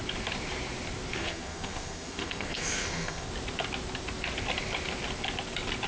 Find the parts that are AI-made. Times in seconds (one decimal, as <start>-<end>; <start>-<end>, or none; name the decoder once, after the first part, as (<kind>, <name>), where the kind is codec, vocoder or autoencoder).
1.1-3.3 (codec, SNAC)